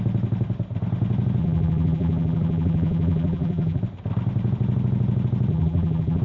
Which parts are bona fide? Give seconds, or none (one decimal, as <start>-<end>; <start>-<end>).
0.0-1.4; 3.8-5.5